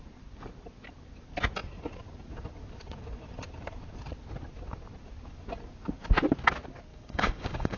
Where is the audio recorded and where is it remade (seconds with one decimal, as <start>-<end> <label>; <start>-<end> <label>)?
0.0-6.9 recorded; 6.9-7.8 remade